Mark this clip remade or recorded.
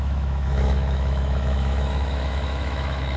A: remade